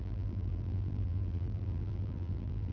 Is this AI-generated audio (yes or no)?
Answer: yes